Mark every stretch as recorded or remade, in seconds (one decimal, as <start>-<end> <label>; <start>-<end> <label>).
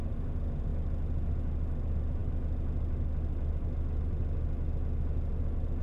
0.0-5.8 recorded